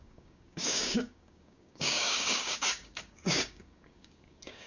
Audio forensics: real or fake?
fake